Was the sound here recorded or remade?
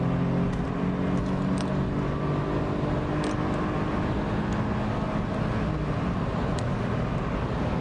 recorded